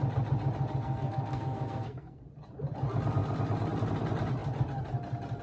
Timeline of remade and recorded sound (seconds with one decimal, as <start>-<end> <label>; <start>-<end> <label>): 0.0-0.8 recorded; 0.8-2.3 remade; 2.3-5.4 recorded

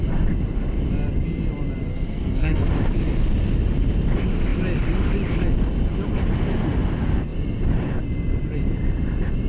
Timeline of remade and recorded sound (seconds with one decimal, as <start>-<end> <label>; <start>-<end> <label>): 0.0-1.9 recorded; 1.9-2.7 remade; 2.7-9.5 recorded

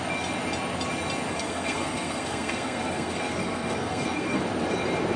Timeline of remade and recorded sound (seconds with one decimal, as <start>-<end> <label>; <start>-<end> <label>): 0.0-1.3 recorded; 1.3-4.4 remade; 4.4-5.2 recorded

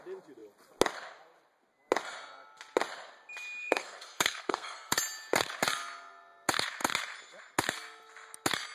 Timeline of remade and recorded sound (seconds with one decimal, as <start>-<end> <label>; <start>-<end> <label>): 0.0-3.6 recorded; 3.6-5.0 remade; 5.0-8.7 recorded

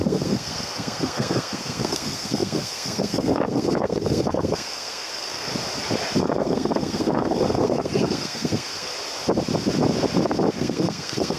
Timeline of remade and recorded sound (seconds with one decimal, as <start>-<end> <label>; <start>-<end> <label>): 0.0-5.5 remade; 5.5-6.2 recorded; 6.2-8.9 remade; 8.9-10.5 recorded; 10.5-11.4 remade

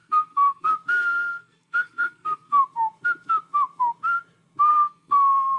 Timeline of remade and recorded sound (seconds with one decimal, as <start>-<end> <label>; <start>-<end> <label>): 0.0-0.7 remade; 0.7-1.4 recorded; 1.4-2.6 remade; 2.6-4.7 recorded; 4.7-5.6 remade

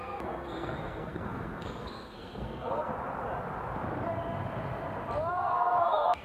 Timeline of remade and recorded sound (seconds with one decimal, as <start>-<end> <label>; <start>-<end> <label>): 0.0-2.9 remade; 2.9-5.3 recorded; 5.3-6.2 remade